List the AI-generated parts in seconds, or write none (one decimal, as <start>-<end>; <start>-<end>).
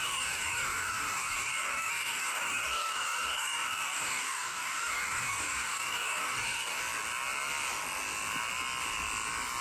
0.0-6.8